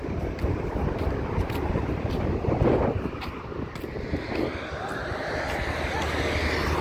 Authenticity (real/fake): real